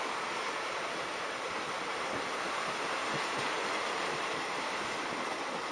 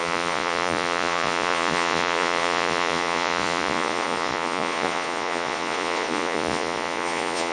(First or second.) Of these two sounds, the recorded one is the first